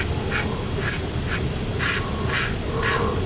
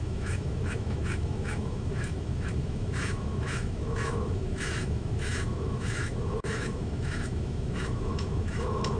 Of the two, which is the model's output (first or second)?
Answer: second